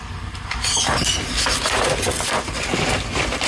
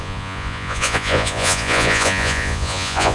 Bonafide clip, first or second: first